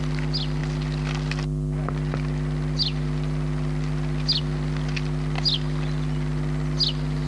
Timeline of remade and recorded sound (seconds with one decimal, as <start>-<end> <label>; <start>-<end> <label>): 0.0-7.3 recorded